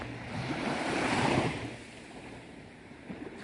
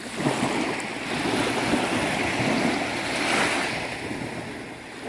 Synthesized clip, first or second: first